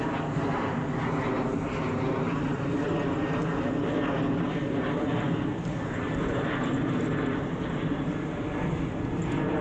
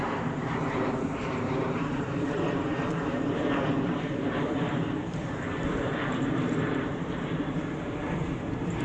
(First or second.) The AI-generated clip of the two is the second